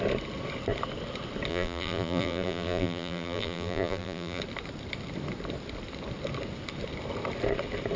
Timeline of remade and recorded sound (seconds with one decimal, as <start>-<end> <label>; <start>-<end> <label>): 0.0-1.5 recorded; 1.5-4.4 remade; 4.4-8.0 recorded